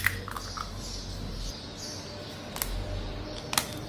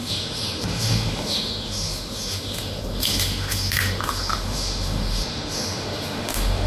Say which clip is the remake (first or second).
second